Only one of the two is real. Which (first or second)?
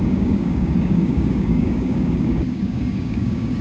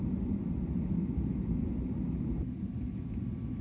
second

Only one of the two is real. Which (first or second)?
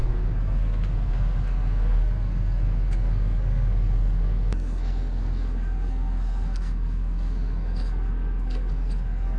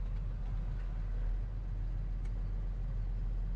second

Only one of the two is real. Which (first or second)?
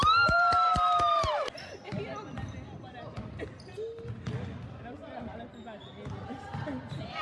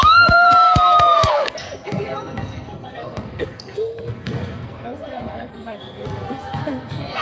first